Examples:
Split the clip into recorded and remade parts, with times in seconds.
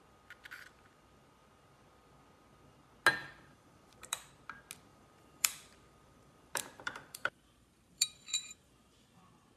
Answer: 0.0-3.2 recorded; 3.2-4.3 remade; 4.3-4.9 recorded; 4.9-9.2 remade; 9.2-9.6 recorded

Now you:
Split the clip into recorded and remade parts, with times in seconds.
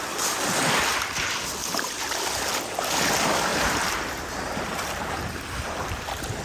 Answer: 0.0-1.6 recorded; 1.6-2.2 remade; 2.2-3.5 recorded; 3.5-6.0 remade; 6.0-6.4 recorded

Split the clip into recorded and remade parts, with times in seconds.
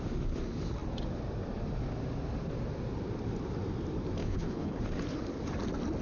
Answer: 0.0-4.2 recorded; 4.2-4.8 remade; 4.8-6.0 recorded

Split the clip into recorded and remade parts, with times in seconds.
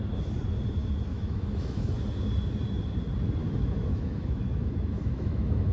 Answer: 0.0-1.1 recorded; 1.1-1.9 remade; 1.9-3.4 recorded; 3.4-5.7 remade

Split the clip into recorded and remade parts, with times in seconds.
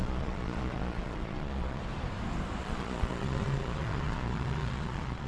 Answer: 0.0-1.8 remade; 1.8-2.6 recorded; 2.6-5.3 remade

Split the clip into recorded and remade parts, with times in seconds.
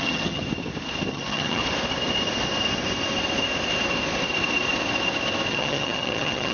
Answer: 0.0-0.4 remade; 0.4-1.1 recorded; 1.1-1.6 remade; 1.6-5.5 recorded; 5.5-6.5 remade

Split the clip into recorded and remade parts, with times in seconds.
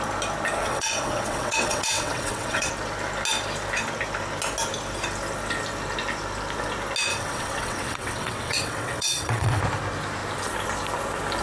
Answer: 0.0-0.6 recorded; 0.6-2.7 remade; 2.7-7.1 recorded; 7.1-9.6 remade; 9.6-11.4 recorded